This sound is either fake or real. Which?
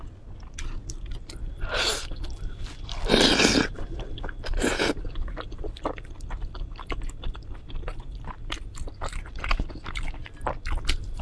real